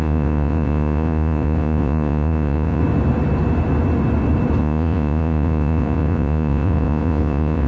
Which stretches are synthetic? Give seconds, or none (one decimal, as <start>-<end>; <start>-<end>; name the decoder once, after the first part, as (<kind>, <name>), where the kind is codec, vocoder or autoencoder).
0.0-2.8 (vocoder, Vocos); 4.6-7.7